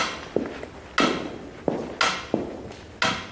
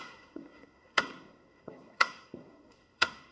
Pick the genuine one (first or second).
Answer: first